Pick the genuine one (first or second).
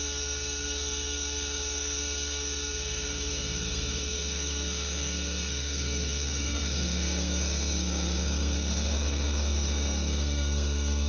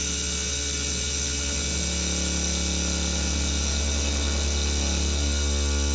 second